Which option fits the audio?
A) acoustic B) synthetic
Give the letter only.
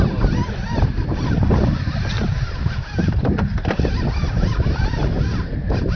B